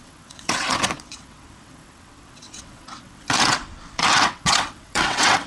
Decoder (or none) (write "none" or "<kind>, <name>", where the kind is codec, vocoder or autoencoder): vocoder, WaveNeXt